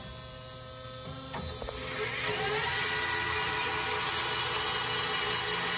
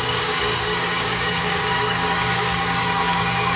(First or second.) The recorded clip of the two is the first